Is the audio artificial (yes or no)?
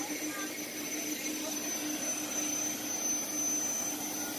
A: no